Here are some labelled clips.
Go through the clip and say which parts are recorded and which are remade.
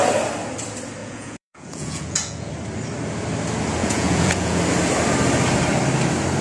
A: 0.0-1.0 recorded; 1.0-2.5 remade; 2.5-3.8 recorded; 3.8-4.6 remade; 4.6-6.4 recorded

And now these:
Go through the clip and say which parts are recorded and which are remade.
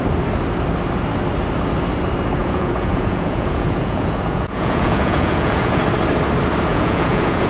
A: 0.0-2.4 recorded; 2.4-5.8 remade; 5.8-6.7 recorded; 6.7-7.5 remade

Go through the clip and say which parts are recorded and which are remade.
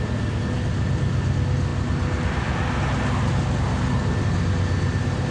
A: 0.0-5.3 recorded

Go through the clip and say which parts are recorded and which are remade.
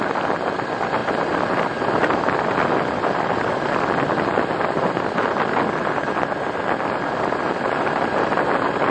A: 0.0-8.9 recorded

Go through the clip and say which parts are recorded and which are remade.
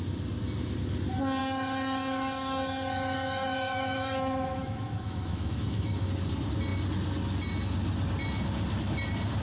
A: 0.0-1.4 recorded; 1.4-6.1 remade; 6.1-9.4 recorded